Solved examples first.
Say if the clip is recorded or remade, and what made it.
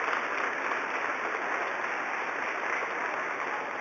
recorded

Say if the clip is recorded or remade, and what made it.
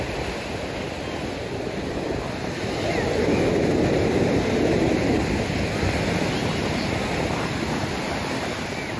recorded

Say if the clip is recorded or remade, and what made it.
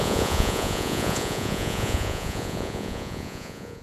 remade, vocoder, Vocos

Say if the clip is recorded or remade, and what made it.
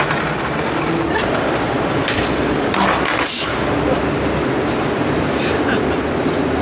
recorded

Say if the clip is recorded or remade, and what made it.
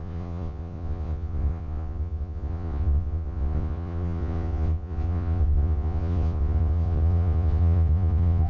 remade, vocoder, Vocos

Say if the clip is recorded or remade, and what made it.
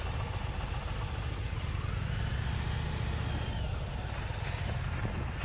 recorded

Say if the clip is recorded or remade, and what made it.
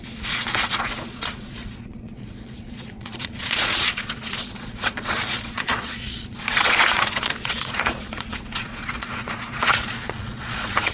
remade, vocoder, Vocos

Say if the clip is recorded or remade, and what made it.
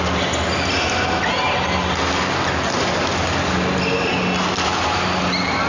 recorded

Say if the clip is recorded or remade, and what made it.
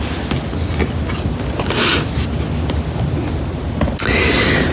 recorded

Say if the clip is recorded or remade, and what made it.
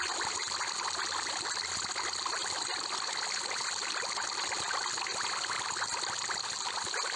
recorded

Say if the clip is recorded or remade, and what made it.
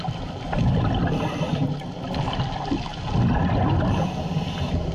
recorded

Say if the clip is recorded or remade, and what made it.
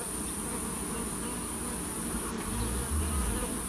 recorded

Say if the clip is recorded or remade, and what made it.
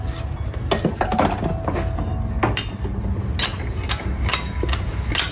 recorded